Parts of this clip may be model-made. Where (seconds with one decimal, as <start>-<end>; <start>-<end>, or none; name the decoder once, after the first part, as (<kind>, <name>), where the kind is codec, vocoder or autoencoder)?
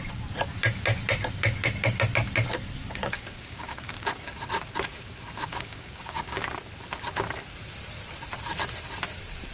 2.8-4.4 (codec, DAC); 5.5-6.6